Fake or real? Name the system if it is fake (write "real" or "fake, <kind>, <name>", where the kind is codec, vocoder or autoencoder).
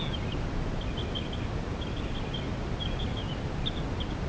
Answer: real